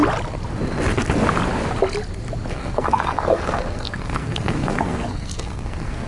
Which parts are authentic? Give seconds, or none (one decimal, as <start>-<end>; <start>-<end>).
0.0-2.5